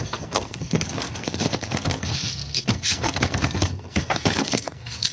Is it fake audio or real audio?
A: fake